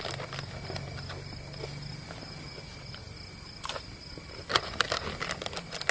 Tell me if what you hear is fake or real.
real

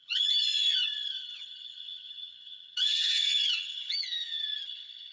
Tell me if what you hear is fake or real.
fake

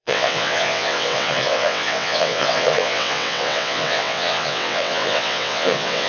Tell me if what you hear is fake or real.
fake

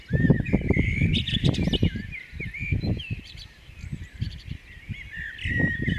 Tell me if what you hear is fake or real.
fake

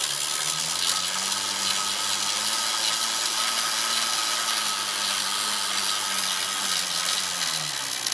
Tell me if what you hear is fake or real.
real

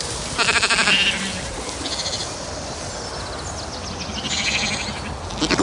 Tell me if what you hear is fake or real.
real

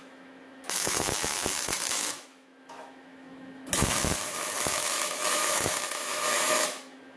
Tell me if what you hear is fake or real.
fake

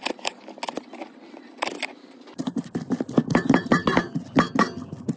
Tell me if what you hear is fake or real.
real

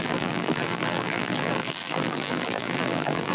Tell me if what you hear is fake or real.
fake